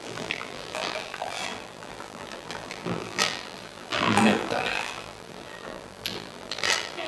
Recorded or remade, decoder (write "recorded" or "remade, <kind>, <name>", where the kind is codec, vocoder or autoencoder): remade, vocoder, BigVGAN v2